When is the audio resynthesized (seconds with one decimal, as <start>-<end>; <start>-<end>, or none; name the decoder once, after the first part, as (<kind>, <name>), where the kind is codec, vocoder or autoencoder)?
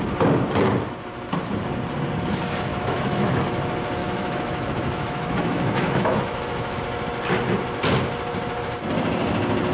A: 2.7-3.4 (autoencoder, DAC-VAE); 4.0-6.8